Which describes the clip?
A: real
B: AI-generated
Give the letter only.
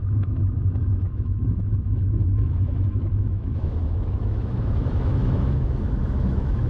B